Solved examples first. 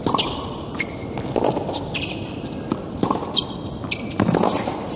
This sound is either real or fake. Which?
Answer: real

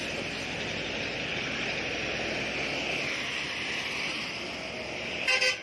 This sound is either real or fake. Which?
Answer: real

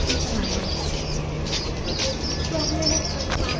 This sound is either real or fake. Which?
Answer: real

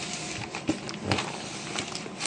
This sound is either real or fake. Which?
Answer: real